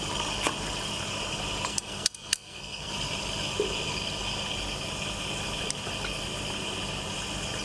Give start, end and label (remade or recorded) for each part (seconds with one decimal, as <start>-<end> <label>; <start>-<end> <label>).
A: 0.0-1.7 recorded; 1.7-2.9 remade; 2.9-7.6 recorded